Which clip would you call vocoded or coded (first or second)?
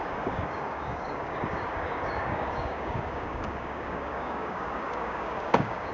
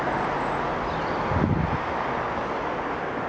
first